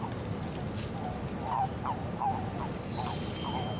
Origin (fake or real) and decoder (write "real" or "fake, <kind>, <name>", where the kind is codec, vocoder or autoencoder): real